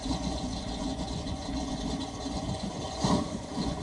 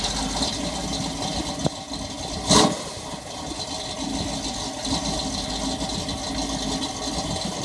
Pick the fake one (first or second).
first